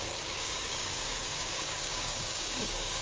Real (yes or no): no